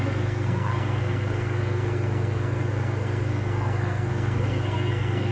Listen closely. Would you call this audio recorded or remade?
remade